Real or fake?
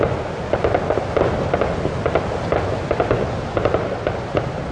real